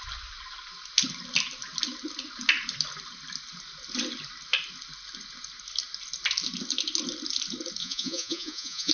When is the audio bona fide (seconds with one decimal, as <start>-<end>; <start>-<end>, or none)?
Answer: 0.0-7.8